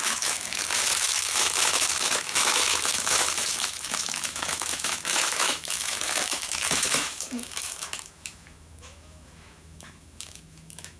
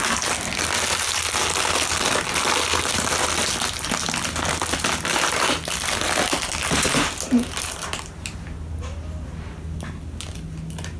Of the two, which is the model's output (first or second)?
first